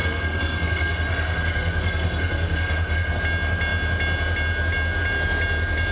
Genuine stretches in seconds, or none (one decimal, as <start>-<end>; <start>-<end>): 3.2-5.9